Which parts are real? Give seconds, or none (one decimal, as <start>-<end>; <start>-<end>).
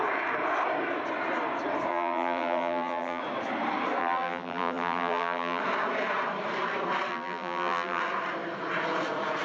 0.0-1.9; 3.2-4.0; 5.6-7.1; 8.0-9.4